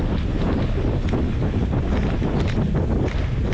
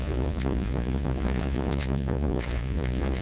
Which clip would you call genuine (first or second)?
first